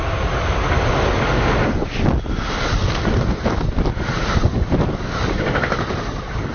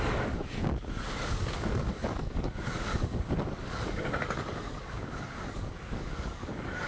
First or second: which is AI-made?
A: second